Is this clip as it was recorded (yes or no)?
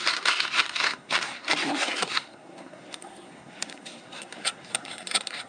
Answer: no